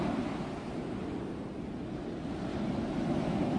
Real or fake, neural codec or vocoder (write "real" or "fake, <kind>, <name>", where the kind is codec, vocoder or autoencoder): real